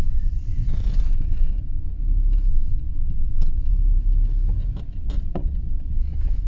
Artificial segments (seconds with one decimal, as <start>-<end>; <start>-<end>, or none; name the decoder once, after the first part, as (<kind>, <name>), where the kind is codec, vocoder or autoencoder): 0.0-2.0 (vocoder, WaveNeXt); 2.5-3.7; 4.8-6.5